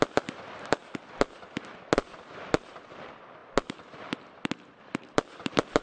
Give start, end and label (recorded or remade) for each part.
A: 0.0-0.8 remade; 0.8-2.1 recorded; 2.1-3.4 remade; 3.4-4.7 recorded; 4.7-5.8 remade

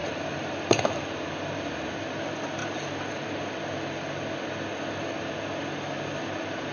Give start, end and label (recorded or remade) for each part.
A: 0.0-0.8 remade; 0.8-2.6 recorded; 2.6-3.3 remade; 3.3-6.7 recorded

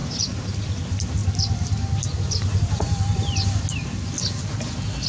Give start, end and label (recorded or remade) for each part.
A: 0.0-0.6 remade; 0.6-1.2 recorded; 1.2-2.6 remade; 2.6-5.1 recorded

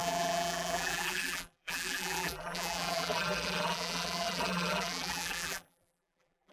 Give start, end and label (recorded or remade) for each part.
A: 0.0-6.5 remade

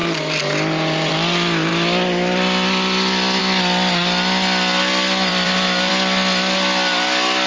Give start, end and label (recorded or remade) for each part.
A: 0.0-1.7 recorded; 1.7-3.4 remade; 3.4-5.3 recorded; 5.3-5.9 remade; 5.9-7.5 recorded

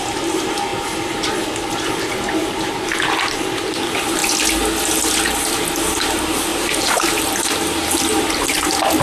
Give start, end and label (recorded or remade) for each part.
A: 0.0-6.5 recorded; 6.5-7.2 remade; 7.2-9.0 recorded

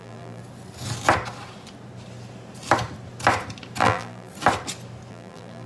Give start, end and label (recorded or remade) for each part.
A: 0.0-0.4 remade; 0.4-3.8 recorded; 3.8-4.3 remade; 4.3-5.1 recorded; 5.1-5.7 remade